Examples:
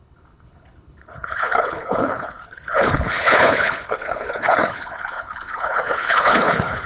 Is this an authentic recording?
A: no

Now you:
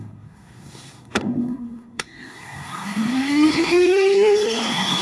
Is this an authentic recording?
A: no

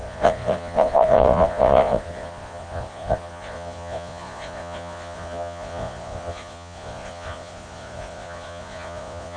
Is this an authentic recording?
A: no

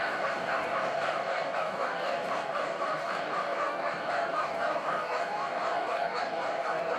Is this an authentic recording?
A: no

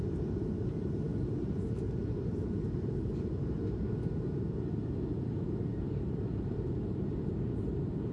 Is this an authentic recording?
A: no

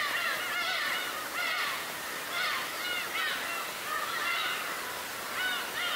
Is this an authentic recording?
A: yes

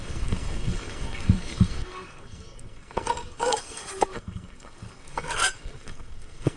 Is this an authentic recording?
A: no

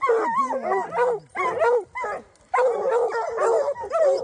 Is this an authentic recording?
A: yes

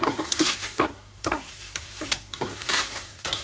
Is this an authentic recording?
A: no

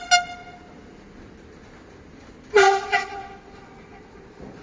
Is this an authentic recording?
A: yes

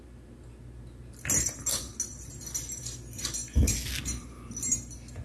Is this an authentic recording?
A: yes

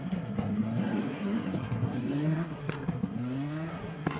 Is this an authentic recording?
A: no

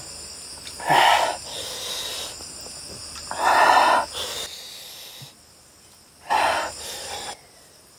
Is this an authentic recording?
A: yes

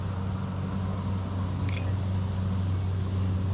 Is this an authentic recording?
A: yes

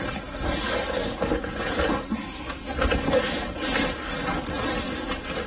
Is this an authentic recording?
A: yes